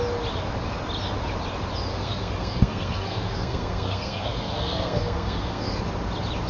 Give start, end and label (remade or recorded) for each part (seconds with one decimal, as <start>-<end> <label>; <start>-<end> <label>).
0.0-1.9 recorded; 1.9-5.8 remade; 5.8-6.5 recorded